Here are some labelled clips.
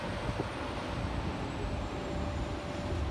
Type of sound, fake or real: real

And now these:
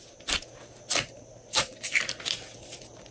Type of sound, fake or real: real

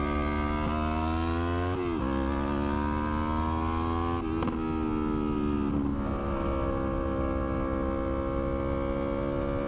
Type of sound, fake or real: real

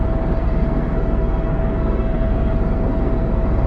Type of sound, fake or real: fake